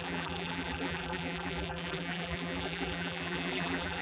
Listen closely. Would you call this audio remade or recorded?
remade